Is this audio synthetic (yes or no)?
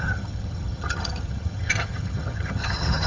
yes